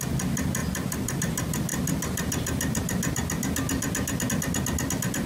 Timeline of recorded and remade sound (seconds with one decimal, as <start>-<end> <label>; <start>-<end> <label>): 0.0-0.6 recorded; 0.6-1.2 remade; 1.2-5.3 recorded